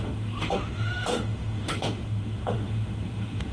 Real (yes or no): no